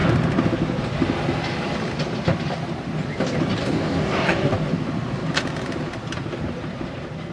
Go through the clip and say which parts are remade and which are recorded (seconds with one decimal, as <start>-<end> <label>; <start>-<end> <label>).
0.0-3.6 recorded; 3.6-4.5 remade; 4.5-7.3 recorded